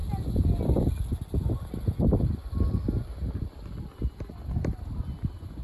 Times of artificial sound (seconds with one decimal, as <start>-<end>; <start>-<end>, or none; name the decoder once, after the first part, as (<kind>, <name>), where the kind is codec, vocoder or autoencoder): none